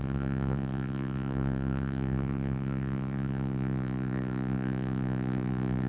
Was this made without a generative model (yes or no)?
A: no